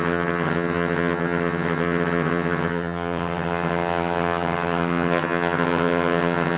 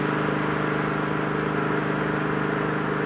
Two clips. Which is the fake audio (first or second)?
first